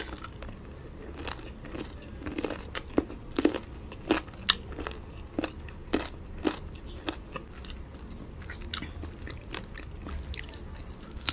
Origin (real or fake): real